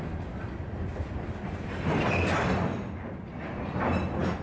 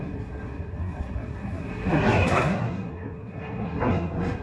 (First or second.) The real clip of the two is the first